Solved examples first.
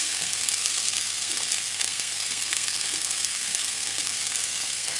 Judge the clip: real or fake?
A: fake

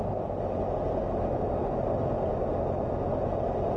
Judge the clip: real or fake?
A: real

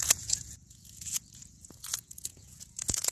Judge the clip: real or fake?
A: fake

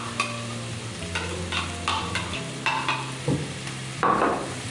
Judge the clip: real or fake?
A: real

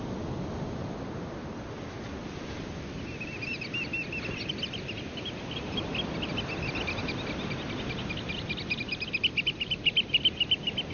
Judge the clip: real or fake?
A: real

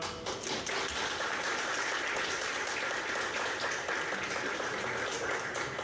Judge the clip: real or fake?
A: real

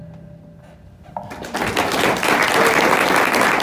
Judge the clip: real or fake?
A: real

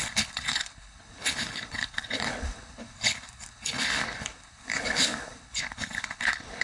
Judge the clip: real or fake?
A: fake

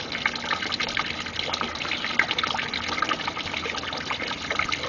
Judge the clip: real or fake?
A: real